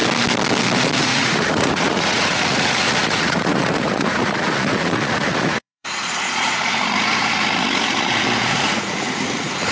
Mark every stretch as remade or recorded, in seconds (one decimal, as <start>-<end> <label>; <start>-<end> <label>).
0.0-1.0 recorded; 1.0-9.7 remade

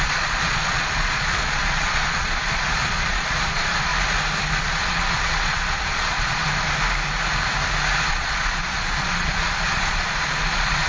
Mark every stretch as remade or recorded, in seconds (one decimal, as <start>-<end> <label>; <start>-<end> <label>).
0.0-3.9 remade; 3.9-4.6 recorded; 4.6-6.4 remade; 6.4-8.1 recorded; 8.1-10.9 remade

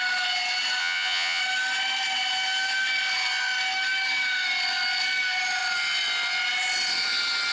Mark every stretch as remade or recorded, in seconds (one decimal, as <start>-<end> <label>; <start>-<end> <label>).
0.0-0.8 recorded; 0.8-1.4 remade; 1.4-7.5 recorded

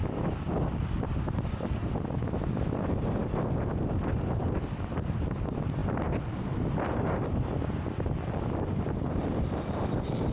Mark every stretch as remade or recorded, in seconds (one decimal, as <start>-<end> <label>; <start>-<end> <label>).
0.0-10.3 recorded